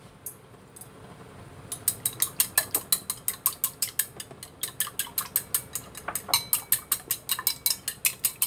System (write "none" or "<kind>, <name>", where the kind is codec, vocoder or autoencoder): none